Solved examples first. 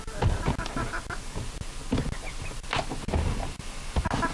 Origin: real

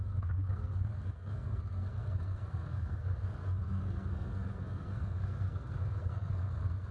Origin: fake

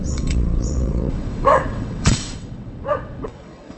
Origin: fake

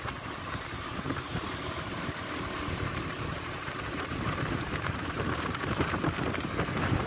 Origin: fake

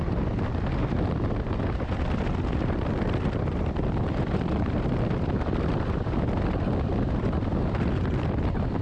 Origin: real